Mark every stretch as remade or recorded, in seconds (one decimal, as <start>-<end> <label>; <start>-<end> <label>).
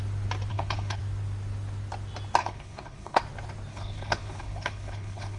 0.0-0.5 recorded; 0.5-1.0 remade; 1.0-2.4 recorded; 2.4-3.2 remade; 3.2-3.7 recorded; 3.7-5.4 remade